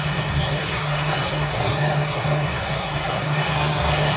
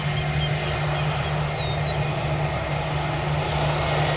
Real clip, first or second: second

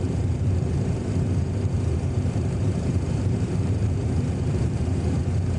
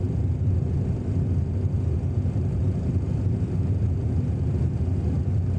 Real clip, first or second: second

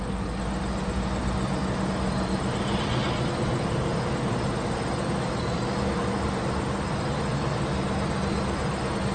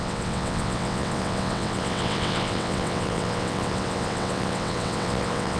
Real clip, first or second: first